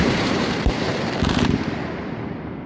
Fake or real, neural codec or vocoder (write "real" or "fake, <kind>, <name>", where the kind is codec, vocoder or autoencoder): fake, vocoder, BigVGAN v2